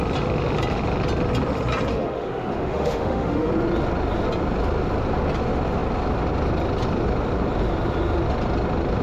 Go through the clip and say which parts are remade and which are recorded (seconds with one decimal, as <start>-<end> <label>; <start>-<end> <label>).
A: 0.0-1.9 recorded; 1.9-3.5 remade; 3.5-9.0 recorded